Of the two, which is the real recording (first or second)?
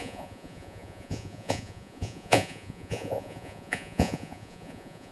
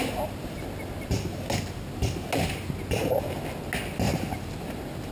second